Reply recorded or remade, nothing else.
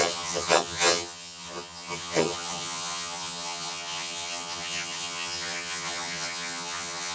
remade